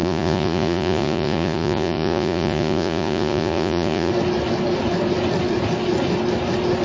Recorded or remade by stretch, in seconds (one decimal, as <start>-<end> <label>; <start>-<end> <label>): 0.0-4.1 remade; 4.1-6.8 recorded